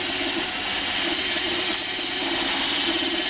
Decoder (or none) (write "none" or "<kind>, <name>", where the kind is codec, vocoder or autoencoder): none